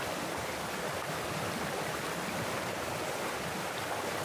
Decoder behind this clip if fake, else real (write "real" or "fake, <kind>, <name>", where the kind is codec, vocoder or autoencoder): real